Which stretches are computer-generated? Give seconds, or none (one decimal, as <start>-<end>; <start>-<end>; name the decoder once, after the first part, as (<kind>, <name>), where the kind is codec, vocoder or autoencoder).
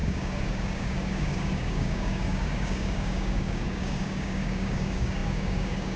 0.0-6.0 (codec, DAC)